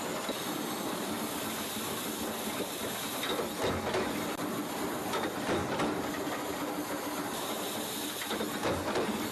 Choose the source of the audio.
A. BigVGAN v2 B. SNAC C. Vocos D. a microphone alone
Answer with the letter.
D